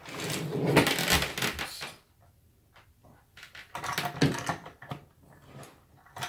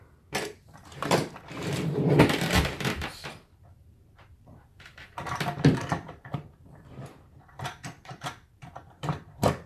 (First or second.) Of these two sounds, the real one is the first